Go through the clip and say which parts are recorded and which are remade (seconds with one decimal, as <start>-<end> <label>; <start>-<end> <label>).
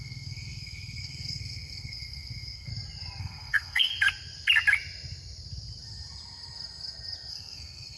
0.0-2.7 remade; 2.7-3.2 recorded; 3.2-3.9 remade; 3.9-7.3 recorded; 7.3-8.0 remade